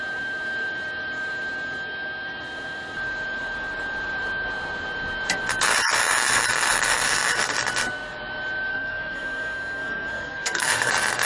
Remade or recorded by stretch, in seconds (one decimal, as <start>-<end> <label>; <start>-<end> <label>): 0.0-8.7 recorded; 8.7-10.9 remade; 10.9-11.3 recorded